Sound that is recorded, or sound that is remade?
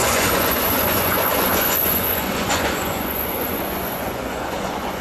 remade